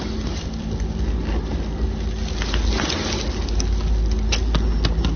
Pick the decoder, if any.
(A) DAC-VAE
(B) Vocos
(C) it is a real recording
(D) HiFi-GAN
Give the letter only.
C